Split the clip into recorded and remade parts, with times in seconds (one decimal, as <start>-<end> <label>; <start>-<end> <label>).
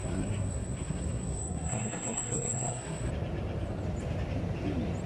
0.0-3.1 remade; 3.1-5.1 recorded